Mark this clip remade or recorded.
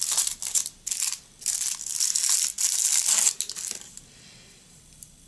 recorded